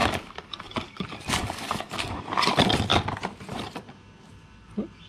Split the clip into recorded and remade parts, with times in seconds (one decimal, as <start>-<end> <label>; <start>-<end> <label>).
0.0-2.3 remade; 2.3-5.1 recorded